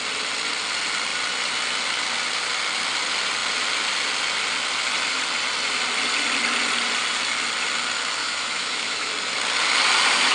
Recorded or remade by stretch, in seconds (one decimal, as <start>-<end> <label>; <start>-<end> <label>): 0.0-8.2 recorded; 8.2-9.1 remade; 9.1-10.3 recorded